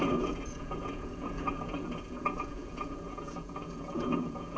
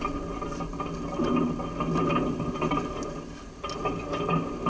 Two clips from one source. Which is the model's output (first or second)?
first